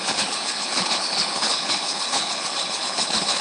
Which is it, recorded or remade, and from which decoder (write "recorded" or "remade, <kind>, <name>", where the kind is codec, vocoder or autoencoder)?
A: remade, codec, HILCodec